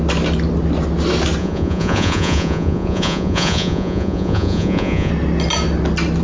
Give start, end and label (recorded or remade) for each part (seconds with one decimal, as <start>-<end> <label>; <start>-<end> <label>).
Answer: 0.0-1.4 recorded; 1.4-5.1 remade; 5.1-6.2 recorded